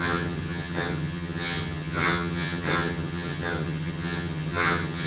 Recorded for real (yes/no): no